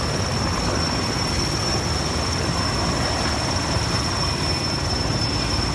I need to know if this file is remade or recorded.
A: recorded